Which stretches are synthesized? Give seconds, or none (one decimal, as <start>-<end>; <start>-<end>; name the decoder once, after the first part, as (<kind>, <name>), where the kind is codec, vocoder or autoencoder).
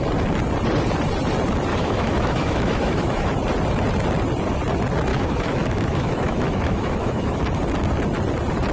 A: 1.7-3.3 (autoencoder, DAC-VAE); 5.1-7.4